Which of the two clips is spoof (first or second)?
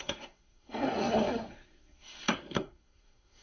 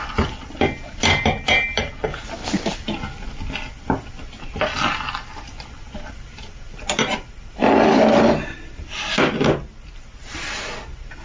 first